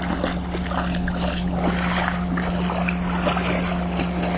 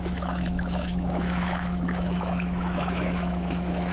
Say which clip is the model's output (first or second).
second